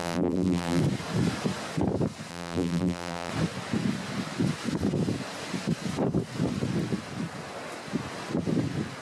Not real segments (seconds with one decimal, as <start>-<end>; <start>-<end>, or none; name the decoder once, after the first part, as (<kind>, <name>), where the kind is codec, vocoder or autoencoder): 0.0-0.8 (vocoder, BigVGAN v2); 2.3-3.3